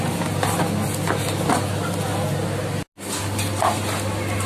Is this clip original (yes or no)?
yes